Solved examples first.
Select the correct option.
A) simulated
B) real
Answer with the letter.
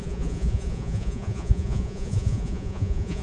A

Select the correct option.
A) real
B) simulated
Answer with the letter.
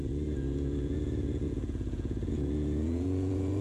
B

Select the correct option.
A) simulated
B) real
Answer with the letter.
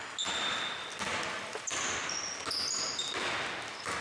B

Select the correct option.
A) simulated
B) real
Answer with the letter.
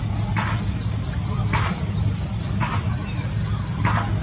B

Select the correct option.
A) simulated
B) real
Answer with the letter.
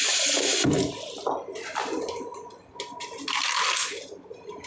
B